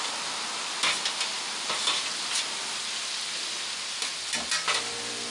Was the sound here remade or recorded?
recorded